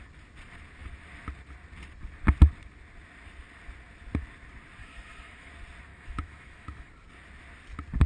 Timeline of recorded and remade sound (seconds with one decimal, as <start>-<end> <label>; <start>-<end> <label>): 0.0-4.8 recorded; 4.8-5.5 remade; 5.5-5.9 recorded; 5.9-6.9 remade; 6.9-8.1 recorded